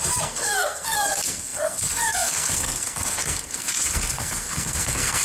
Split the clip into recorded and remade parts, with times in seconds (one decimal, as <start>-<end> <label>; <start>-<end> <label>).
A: 0.0-5.2 remade